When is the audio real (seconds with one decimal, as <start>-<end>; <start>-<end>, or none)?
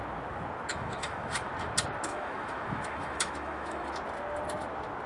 0.0-0.7; 1.5-2.1; 3.9-5.1